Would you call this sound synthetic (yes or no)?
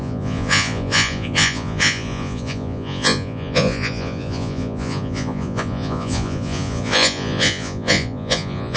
yes